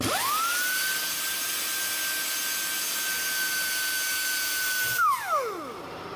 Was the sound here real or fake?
real